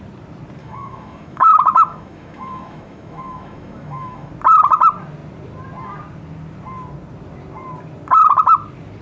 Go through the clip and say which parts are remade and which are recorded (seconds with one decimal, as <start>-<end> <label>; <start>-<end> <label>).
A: 0.0-0.6 recorded; 0.6-4.3 remade; 4.3-9.0 recorded